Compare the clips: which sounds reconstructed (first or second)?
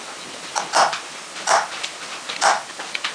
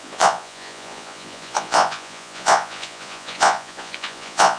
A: second